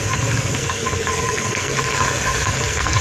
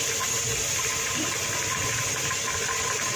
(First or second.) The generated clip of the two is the first